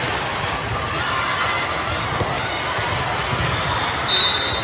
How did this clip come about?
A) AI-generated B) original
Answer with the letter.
B